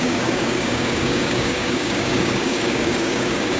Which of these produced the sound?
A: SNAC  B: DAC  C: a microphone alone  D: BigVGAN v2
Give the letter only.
B